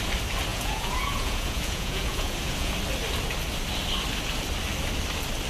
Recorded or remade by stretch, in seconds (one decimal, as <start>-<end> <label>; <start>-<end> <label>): 0.0-0.5 recorded; 0.5-2.7 remade; 2.7-5.5 recorded